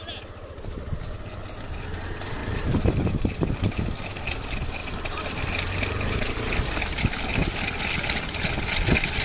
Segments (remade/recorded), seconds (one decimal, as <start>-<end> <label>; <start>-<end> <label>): 0.0-2.4 recorded; 2.4-3.6 remade; 3.6-9.2 recorded